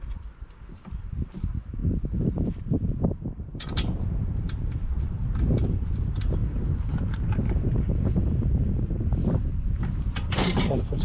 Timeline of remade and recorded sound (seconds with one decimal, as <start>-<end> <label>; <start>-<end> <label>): 0.0-11.0 remade